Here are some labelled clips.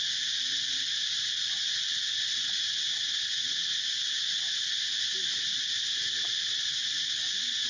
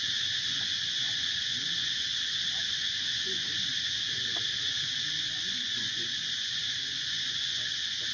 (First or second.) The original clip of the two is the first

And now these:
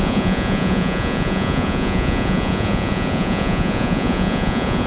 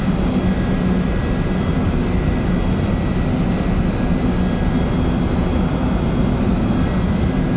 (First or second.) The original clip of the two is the second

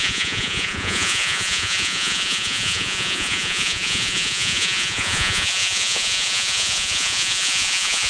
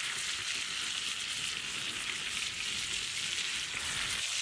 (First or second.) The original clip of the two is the second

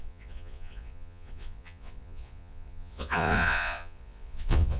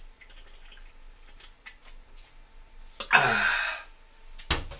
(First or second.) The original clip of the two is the second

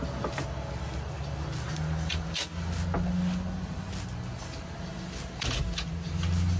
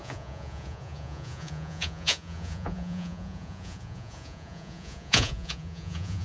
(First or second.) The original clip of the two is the first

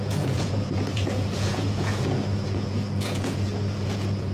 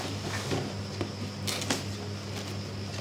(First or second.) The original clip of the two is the second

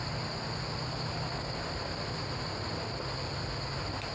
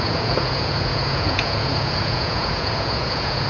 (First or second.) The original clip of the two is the first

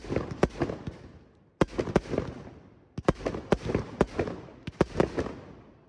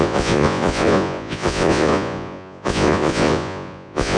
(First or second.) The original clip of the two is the first